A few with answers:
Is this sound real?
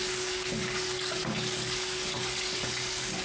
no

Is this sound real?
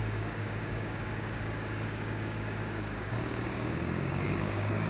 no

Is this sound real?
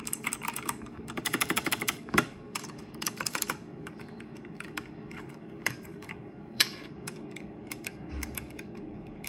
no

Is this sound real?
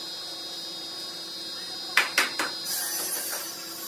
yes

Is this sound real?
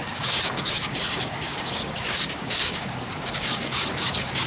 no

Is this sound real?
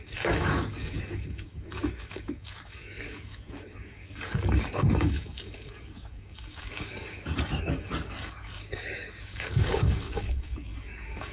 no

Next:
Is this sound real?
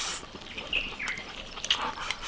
yes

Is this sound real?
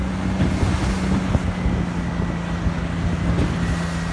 yes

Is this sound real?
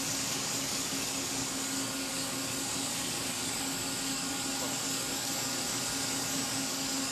no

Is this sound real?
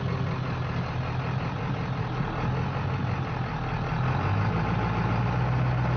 yes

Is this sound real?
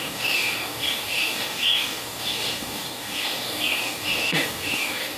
no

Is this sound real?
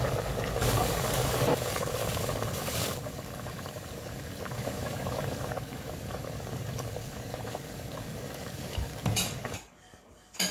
no